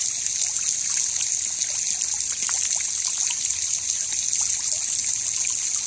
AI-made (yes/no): no